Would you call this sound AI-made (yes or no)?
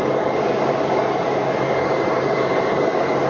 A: yes